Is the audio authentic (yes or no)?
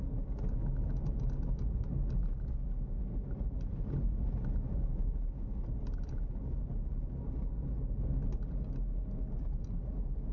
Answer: yes